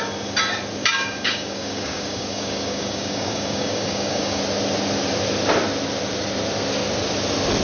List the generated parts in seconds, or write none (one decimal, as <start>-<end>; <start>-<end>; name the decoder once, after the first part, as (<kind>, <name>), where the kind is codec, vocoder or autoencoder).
0.8-4.4 (codec, DAC)